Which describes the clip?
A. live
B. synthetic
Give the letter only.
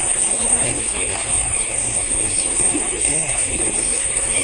B